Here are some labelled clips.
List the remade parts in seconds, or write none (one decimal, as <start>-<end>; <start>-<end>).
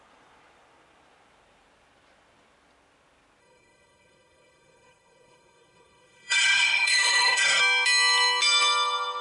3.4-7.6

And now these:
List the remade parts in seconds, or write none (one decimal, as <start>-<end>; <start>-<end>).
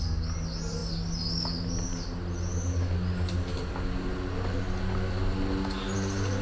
none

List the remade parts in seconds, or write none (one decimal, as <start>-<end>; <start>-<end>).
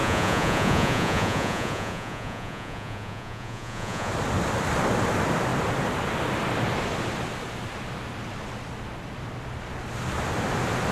0.0-4.1